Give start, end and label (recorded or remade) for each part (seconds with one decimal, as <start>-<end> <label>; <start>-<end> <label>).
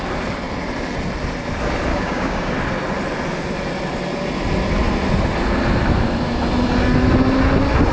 0.0-1.9 recorded; 1.9-2.5 remade; 2.5-7.9 recorded